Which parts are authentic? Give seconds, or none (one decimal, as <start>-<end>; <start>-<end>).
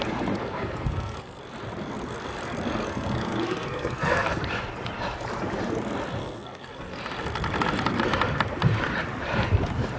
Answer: 0.0-0.4; 1.4-2.8; 4.4-6.2; 7.0-10.0